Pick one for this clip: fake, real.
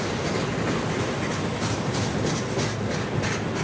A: real